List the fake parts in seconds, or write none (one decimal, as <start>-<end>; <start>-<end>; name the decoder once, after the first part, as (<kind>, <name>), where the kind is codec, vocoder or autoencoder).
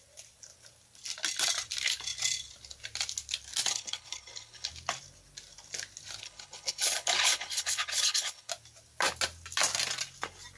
3.7-4.7 (codec, HILCodec); 6.2-8.5